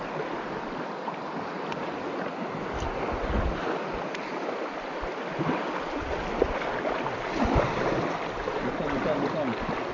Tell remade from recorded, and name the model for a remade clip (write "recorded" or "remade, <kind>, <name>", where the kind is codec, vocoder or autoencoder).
recorded